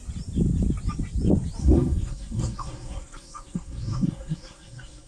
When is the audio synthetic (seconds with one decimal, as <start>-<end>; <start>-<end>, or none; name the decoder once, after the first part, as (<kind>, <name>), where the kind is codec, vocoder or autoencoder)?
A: 1.6-5.1 (codec, SNAC)